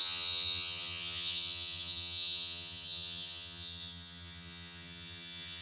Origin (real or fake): fake